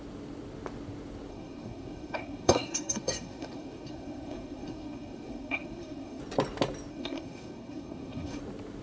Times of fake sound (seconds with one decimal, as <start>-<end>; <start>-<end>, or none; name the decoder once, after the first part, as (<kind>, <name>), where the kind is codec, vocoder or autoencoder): 1.3-6.2 (codec, SNAC); 6.9-8.4